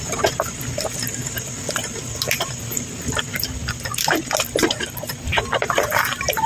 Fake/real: real